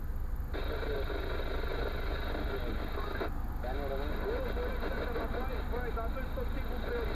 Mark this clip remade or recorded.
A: recorded